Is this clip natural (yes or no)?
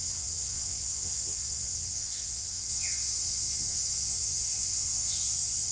no